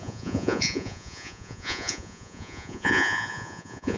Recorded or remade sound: remade